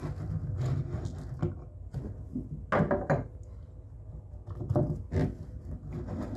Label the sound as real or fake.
real